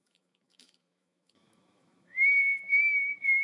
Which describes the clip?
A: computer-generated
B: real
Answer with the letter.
A